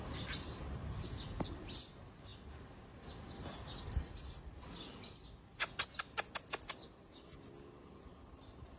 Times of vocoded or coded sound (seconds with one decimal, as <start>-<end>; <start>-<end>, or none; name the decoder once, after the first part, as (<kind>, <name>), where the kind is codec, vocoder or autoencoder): none